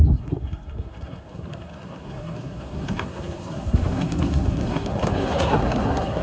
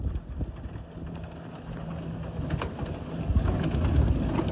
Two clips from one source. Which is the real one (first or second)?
second